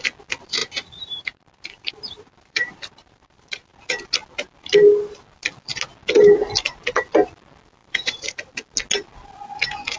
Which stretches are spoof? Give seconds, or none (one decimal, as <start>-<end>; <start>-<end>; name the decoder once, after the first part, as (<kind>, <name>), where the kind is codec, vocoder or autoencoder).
0.6-3.8 (vocoder, BigVGAN v2); 7.8-8.5